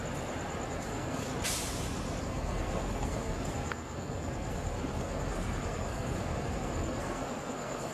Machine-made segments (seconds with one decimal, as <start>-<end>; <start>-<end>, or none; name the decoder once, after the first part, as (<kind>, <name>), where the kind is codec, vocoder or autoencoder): 0.7-1.3 (codec, SNAC); 2.2-7.9